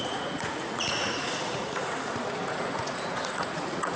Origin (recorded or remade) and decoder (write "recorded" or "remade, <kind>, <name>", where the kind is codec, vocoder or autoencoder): remade, vocoder, Vocos